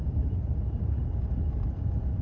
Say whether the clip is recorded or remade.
remade